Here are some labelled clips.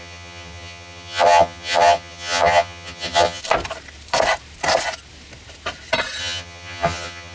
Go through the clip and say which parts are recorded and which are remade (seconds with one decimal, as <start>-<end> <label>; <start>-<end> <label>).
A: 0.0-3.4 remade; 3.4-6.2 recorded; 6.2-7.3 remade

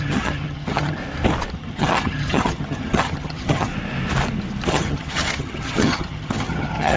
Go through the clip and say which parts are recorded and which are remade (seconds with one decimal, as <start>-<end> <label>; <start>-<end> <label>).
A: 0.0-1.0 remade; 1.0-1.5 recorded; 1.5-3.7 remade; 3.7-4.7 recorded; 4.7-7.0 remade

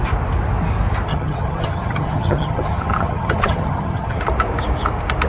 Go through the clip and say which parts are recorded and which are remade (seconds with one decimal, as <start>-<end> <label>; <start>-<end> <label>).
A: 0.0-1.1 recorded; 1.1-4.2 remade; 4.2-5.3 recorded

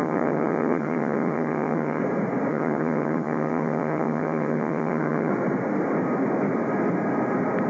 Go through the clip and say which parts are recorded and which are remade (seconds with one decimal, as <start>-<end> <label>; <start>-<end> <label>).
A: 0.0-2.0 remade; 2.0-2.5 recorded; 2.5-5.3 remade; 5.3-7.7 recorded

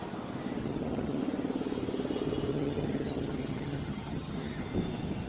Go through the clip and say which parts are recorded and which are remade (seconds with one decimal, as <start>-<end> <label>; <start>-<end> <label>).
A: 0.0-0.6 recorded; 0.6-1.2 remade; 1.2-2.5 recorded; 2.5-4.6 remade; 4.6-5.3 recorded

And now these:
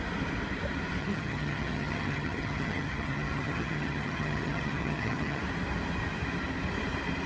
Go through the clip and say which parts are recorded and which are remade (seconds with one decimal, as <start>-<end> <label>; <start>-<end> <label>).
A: 0.0-1.0 recorded; 1.0-5.4 remade; 5.4-7.3 recorded

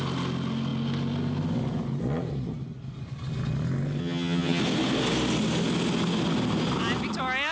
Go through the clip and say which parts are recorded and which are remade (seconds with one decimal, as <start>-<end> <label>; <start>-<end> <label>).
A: 0.0-4.0 recorded; 4.0-4.6 remade; 4.6-7.5 recorded

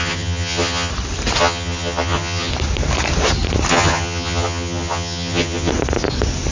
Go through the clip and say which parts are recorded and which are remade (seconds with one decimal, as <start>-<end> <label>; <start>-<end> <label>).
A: 0.0-0.9 remade; 0.9-1.4 recorded; 1.4-2.5 remade; 2.5-3.7 recorded; 3.7-5.7 remade; 5.7-6.5 recorded